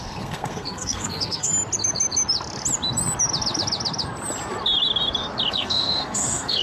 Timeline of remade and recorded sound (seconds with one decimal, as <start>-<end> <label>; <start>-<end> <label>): 0.0-1.5 remade; 1.5-5.5 recorded; 5.5-6.6 remade